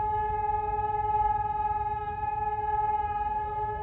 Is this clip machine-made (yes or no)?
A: yes